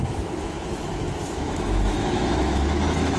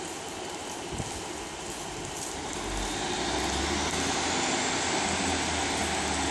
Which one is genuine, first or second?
second